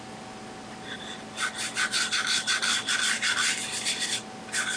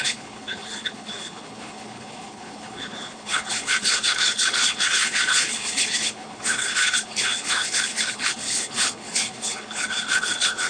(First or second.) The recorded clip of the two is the first